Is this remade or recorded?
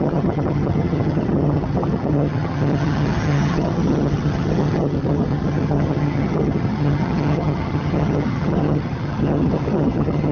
remade